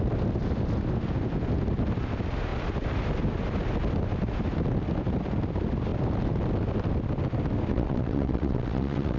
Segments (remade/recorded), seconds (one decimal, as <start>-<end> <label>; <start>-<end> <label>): 0.0-7.7 recorded; 7.7-9.2 remade